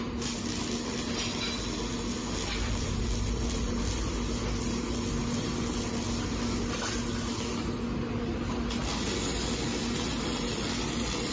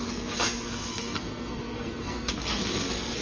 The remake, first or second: second